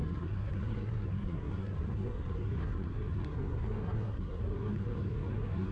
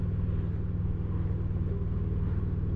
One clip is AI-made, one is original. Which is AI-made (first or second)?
first